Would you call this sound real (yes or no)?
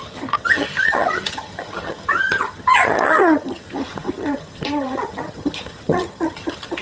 no